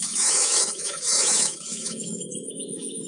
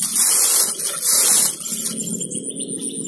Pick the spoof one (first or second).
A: first